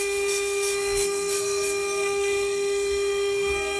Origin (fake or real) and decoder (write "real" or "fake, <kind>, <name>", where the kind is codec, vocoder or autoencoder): fake, codec, SNAC